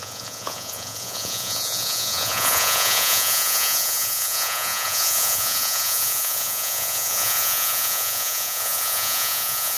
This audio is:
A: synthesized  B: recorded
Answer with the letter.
A